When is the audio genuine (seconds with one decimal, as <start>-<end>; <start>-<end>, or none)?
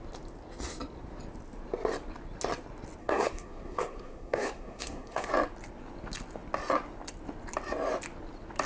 0.0-3.0; 5.3-8.7